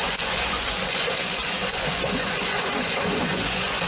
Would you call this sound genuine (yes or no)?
no